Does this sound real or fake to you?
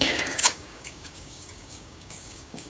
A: fake